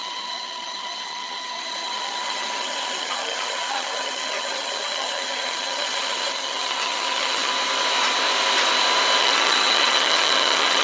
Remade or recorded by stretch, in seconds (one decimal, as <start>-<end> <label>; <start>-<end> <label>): 0.0-7.5 remade; 7.5-9.2 recorded; 9.2-10.8 remade